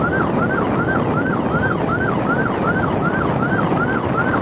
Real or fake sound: real